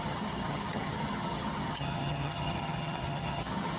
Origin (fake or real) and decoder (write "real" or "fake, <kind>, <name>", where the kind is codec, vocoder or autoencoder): fake, vocoder, HiFi-GAN